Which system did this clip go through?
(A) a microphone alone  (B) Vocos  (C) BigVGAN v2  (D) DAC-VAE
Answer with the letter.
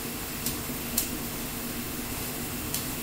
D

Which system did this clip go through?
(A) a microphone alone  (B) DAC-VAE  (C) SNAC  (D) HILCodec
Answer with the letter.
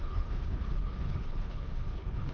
D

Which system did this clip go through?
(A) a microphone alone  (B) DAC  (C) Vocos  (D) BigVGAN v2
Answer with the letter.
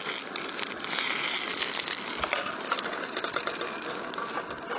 A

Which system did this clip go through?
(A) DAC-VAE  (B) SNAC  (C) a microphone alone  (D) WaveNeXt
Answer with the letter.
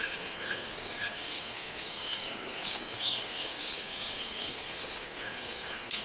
B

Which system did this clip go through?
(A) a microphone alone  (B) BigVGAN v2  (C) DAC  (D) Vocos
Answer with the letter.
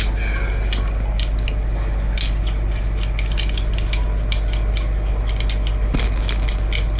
A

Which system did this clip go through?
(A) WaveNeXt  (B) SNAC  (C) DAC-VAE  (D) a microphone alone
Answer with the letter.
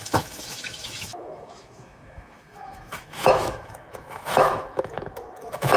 C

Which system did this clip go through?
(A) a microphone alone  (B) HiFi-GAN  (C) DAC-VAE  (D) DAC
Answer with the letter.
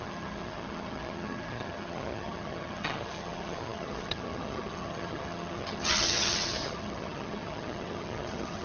B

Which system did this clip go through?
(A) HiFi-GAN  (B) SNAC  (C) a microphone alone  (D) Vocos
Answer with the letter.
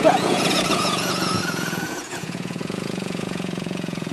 D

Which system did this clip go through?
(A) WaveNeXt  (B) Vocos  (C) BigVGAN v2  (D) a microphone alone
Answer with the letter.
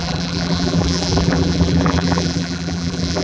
C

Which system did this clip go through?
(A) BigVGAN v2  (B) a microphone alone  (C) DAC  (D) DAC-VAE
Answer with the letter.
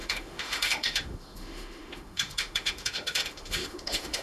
D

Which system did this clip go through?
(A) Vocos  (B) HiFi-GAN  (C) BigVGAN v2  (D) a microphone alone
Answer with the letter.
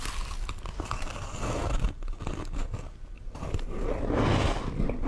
D